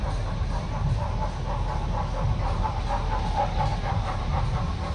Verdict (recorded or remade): recorded